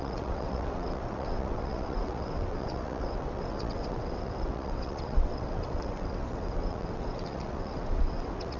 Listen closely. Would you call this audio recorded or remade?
remade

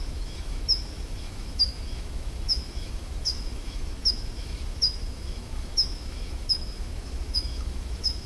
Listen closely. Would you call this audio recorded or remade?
remade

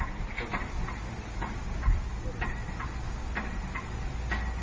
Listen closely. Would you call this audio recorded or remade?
recorded